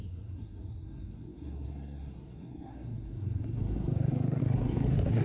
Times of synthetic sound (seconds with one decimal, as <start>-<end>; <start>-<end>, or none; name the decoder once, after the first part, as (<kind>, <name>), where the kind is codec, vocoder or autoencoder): 0.0-5.2 (codec, SNAC)